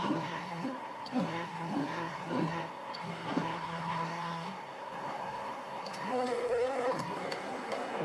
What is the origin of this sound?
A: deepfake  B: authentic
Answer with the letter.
A